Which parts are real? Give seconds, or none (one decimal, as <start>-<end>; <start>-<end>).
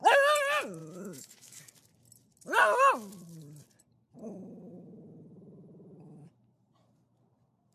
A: 0.0-0.8; 1.6-7.7